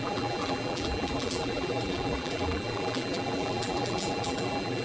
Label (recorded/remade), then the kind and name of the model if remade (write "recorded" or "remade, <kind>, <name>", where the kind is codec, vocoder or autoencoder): remade, vocoder, BigVGAN v2